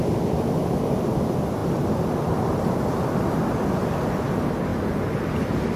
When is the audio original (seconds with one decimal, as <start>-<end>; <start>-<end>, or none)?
0.0-5.8